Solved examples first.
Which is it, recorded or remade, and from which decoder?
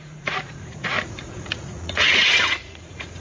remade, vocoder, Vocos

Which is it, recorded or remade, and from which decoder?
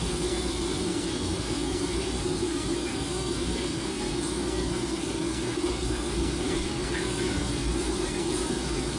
remade, codec, SNAC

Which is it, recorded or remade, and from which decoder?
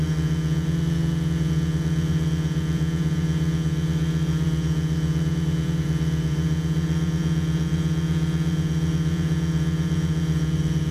remade, vocoder, Vocos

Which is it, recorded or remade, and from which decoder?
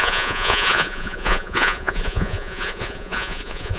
remade, vocoder, Vocos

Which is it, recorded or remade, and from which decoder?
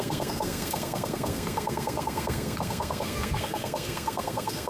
remade, codec, SNAC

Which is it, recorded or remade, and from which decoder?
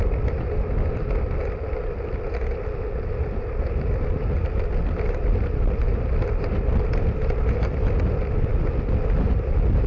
recorded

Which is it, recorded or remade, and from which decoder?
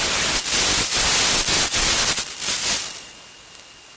recorded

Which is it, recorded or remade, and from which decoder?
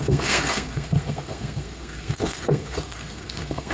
remade, codec, SNAC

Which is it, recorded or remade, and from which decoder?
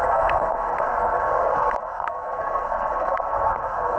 remade, codec, SNAC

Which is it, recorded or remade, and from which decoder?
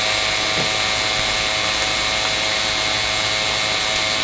recorded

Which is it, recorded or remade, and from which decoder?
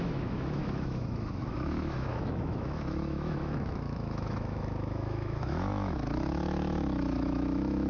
remade, autoencoder, DAC-VAE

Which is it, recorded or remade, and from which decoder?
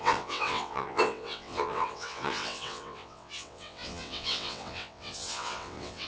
remade, vocoder, WaveNeXt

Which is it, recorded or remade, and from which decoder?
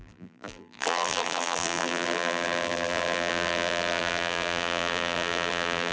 remade, vocoder, BigVGAN v2